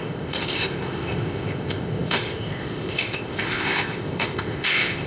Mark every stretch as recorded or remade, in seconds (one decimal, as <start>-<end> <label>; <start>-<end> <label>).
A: 0.0-5.1 remade